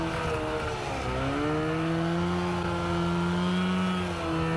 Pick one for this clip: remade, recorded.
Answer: recorded